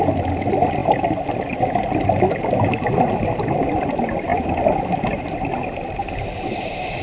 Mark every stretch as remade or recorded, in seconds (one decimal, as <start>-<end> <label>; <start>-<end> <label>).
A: 0.0-0.8 remade; 0.8-2.9 recorded; 2.9-7.0 remade